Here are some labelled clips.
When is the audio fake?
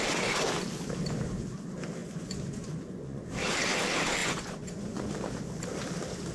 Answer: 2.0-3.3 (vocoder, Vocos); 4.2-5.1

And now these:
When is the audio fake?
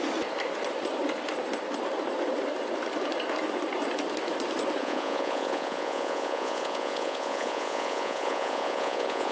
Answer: 4.8-9.3 (vocoder, Vocos)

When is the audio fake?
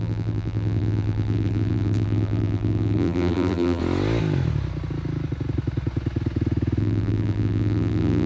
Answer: 0.0-3.8 (vocoder, BigVGAN v2); 6.8-8.3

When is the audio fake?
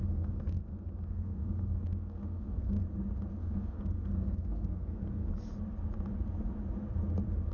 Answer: 0.0-2.8 (codec, SNAC); 3.4-5.3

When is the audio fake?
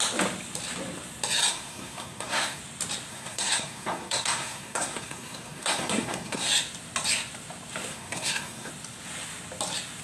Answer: 1.5-2.6 (codec, SNAC); 3.1-6.5; 7.9-8.7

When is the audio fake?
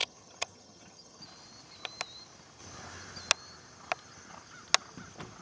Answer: 0.0-1.2 (vocoder, HiFi-GAN)